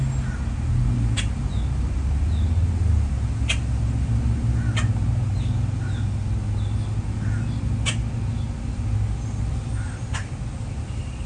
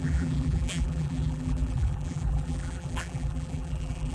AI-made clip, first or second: second